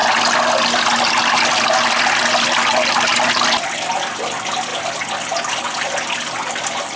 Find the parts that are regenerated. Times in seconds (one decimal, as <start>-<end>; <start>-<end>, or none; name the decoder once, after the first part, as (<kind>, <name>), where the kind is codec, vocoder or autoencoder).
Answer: none